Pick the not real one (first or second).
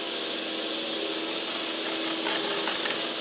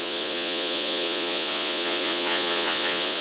second